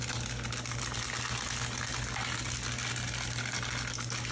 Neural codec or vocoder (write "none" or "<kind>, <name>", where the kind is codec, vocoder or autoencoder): none